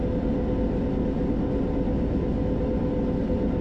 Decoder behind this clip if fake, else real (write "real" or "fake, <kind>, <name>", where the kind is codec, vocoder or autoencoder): real